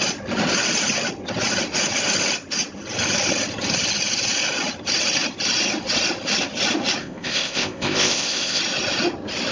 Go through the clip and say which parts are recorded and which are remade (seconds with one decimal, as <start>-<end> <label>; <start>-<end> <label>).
0.0-7.0 recorded; 7.0-8.6 remade; 8.6-9.5 recorded